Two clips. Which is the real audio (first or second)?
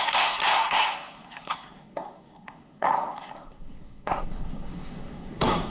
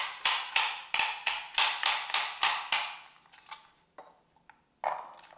second